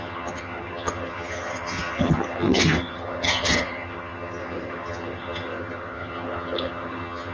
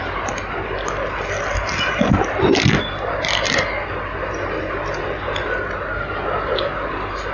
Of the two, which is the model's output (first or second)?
first